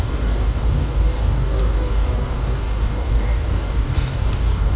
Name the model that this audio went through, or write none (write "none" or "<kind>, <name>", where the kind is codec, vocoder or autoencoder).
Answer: codec, DAC